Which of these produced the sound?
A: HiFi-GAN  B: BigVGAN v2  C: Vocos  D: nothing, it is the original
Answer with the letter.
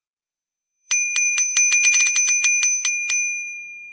B